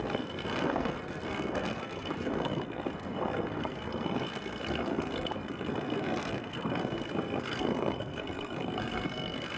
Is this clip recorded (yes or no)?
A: no